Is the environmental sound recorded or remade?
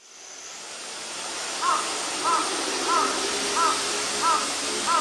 recorded